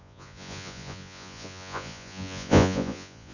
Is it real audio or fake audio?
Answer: fake